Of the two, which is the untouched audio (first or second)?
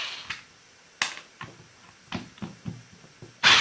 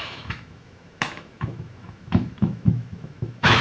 first